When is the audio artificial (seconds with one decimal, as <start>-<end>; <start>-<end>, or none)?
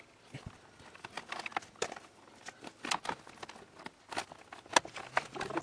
none